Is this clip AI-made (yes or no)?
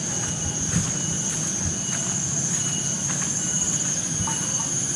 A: no